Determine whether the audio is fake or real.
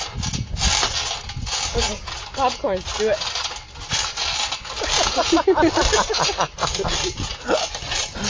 real